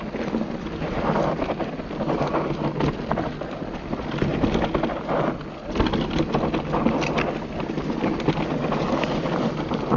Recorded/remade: recorded